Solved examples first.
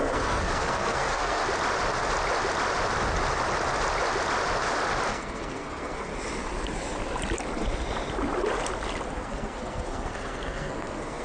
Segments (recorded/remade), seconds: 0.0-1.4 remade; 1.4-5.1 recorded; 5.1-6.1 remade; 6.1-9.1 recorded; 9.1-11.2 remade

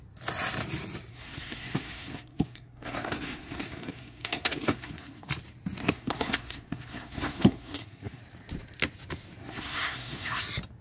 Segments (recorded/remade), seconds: 0.0-1.1 recorded; 1.1-5.3 remade; 5.3-5.8 recorded; 5.8-8.2 remade; 8.2-9.4 recorded; 9.4-10.4 remade; 10.4-10.8 recorded

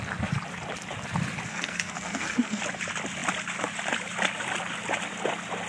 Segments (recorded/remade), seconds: 0.0-1.5 recorded; 1.5-2.6 remade; 2.6-5.7 recorded

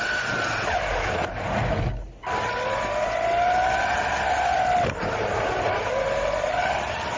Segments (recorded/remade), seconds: 0.0-7.2 recorded

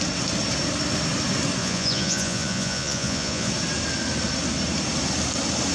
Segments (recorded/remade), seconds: 0.0-1.6 recorded; 1.6-3.5 remade; 3.5-5.7 recorded